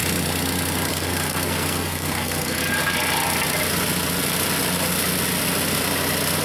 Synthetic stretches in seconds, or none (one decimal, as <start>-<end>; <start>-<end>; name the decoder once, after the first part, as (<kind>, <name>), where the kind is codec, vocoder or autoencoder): 0.9-2.6 (codec, SNAC)